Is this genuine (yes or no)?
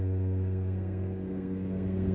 no